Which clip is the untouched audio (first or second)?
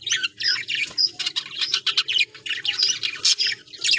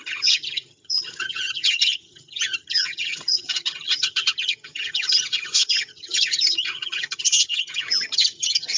first